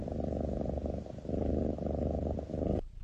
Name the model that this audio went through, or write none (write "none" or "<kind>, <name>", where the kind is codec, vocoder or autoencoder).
none